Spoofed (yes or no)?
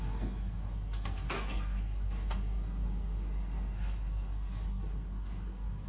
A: yes